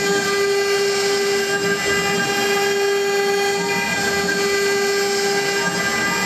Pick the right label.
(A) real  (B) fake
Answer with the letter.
A